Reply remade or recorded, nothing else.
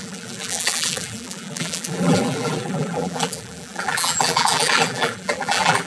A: remade